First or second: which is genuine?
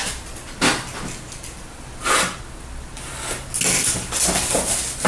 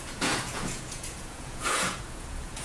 first